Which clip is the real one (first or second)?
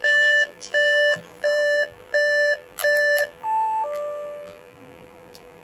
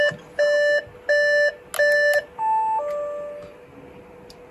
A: second